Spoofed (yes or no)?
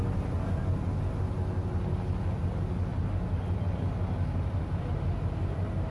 no